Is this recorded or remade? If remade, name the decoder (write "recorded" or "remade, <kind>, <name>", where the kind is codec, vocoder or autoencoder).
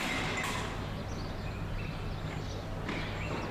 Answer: recorded